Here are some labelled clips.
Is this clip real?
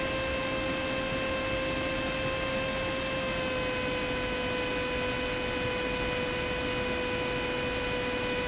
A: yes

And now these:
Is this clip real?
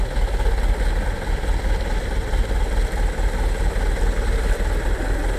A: yes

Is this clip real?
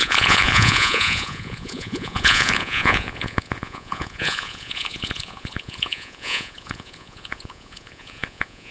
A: no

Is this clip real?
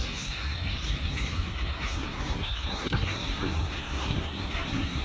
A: no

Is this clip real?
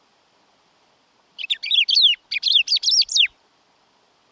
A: yes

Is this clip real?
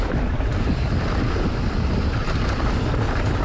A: yes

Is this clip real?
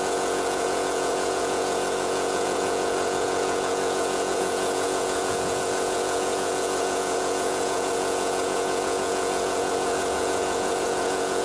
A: no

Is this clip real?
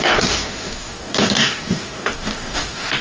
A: no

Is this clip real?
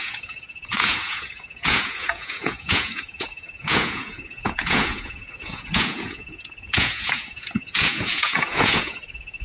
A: no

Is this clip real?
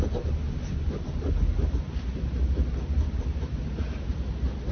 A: yes